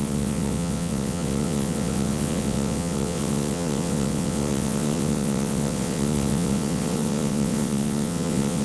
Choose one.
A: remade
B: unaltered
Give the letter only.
A